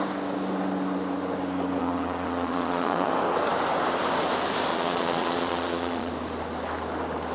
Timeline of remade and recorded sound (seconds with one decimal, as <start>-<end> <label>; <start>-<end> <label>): 0.0-1.8 recorded; 1.8-3.1 remade; 3.1-4.7 recorded; 4.7-6.1 remade; 6.1-7.3 recorded